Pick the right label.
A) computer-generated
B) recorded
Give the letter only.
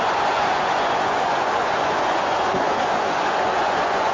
A